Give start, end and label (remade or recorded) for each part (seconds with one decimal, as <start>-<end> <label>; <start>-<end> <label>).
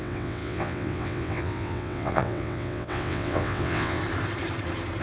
0.0-4.0 remade; 4.0-5.0 recorded